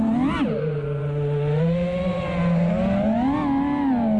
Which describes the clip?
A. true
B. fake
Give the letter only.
A